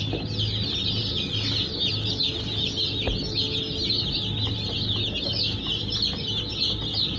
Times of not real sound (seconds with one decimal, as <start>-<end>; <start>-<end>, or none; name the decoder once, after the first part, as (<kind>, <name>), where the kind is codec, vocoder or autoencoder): none

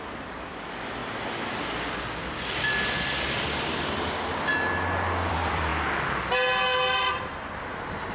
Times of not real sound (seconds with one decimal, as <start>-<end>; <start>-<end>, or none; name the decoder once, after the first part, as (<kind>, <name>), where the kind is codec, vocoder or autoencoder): 0.0-1.0 (vocoder, BigVGAN v2); 2.0-4.5; 5.3-5.7; 7.0-8.1

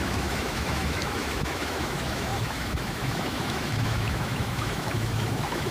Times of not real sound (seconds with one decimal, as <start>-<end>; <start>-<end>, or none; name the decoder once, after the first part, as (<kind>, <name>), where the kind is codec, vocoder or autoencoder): 0.0-5.7 (autoencoder, DAC-VAE)

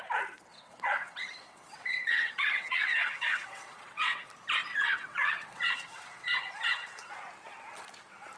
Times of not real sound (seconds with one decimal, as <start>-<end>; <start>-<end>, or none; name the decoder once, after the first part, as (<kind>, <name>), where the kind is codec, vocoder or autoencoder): 0.5-4.3 (vocoder, WaveNeXt); 4.7-7.1

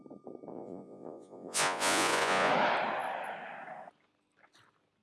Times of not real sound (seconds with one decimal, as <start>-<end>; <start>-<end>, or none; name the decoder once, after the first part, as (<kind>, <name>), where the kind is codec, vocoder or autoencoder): 0.5-2.5 (vocoder, Vocos)

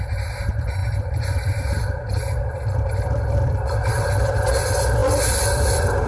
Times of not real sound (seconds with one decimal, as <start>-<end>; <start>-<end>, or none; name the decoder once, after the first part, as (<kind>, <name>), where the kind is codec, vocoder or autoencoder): 0.8-4.5 (vocoder, BigVGAN v2); 5.0-6.1

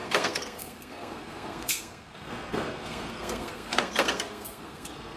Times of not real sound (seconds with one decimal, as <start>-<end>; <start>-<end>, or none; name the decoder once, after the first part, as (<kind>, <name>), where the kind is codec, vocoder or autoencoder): 0.0-5.2 (codec, SNAC)